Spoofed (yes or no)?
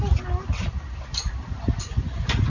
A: no